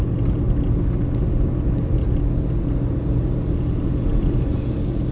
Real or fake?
real